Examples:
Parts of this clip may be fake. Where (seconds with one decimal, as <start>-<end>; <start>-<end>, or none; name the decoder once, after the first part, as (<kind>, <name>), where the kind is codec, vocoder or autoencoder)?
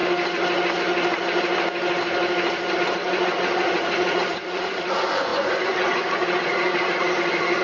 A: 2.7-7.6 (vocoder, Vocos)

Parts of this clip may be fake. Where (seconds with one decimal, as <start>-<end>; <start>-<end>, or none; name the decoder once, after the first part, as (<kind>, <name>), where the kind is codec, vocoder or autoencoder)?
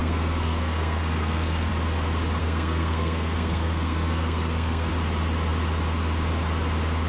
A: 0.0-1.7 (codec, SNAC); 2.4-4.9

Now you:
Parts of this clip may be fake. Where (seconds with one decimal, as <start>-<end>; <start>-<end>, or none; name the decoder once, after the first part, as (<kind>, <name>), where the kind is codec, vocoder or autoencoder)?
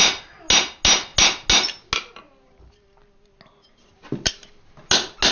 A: none